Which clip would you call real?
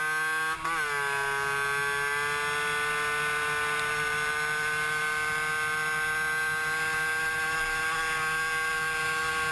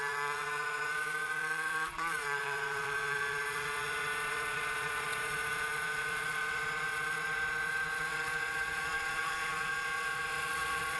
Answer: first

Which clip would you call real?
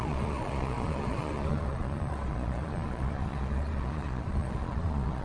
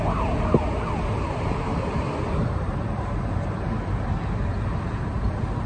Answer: second